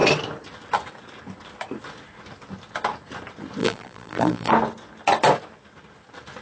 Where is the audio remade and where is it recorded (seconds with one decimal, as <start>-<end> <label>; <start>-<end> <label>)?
0.0-3.6 recorded; 3.6-4.5 remade; 4.5-6.4 recorded